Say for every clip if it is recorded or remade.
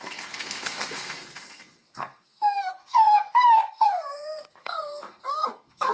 remade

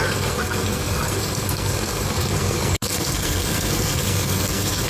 remade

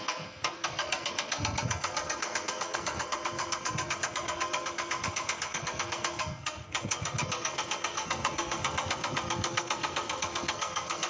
remade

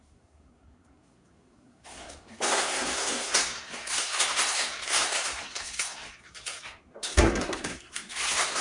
remade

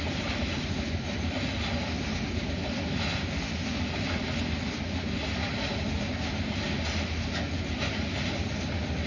recorded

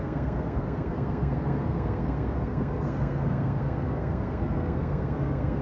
remade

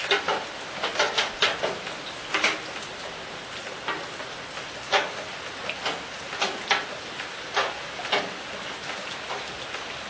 recorded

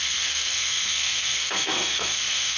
remade